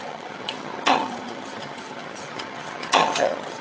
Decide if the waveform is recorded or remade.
remade